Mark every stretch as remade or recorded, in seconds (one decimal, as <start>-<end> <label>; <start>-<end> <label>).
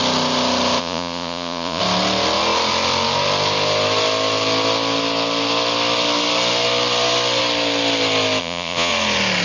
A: 0.0-0.8 recorded; 0.8-1.8 remade; 1.8-8.4 recorded; 8.4-8.9 remade; 8.9-9.4 recorded